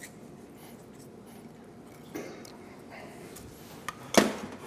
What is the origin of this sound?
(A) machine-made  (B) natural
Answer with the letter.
B